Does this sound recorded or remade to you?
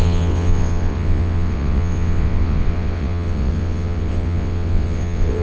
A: remade